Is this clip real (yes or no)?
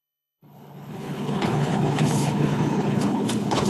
no